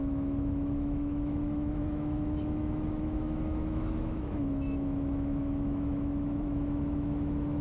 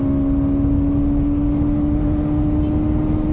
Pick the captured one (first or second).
second